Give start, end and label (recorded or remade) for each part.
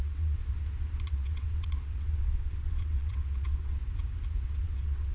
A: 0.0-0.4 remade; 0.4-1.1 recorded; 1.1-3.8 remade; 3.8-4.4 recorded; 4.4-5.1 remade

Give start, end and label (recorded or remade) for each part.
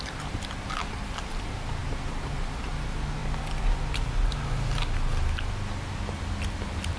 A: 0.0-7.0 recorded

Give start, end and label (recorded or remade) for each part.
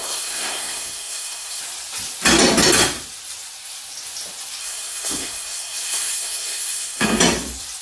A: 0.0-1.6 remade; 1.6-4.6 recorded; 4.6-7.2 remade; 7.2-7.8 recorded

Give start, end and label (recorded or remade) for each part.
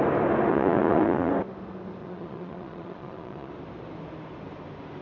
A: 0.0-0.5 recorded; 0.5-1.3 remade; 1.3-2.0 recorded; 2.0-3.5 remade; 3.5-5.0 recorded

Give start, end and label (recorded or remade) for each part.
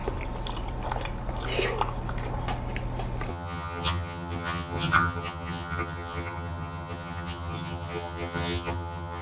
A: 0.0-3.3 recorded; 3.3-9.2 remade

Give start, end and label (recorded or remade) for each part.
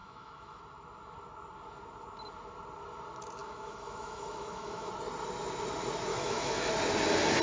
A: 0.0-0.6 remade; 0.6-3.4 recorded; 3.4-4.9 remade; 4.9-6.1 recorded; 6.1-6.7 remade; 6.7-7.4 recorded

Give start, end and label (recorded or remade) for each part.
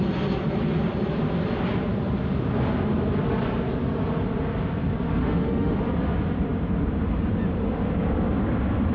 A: 0.0-5.2 recorded; 5.2-5.8 remade; 5.8-8.9 recorded